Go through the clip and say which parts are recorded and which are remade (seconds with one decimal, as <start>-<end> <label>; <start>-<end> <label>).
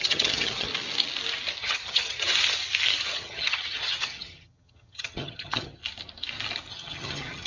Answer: 0.0-0.7 remade; 0.7-1.6 recorded; 1.6-2.3 remade; 2.3-3.0 recorded; 3.0-5.8 remade; 5.8-6.7 recorded; 6.7-7.5 remade